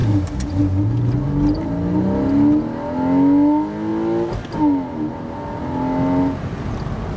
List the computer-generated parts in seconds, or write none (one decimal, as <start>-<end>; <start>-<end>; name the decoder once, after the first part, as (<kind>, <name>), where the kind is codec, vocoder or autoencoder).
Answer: none